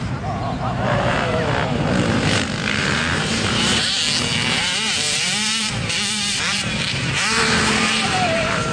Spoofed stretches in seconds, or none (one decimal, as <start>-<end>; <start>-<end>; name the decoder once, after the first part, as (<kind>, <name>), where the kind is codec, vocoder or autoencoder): 0.0-4.0 (vocoder, BigVGAN v2); 4.6-8.7